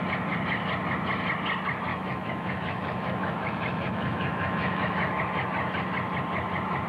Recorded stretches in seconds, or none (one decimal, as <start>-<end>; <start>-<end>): 0.0-1.9; 5.2-6.9